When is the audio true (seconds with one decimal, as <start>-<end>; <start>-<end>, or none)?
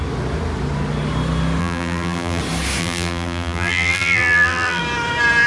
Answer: 0.0-1.6; 2.4-2.8; 4.8-5.5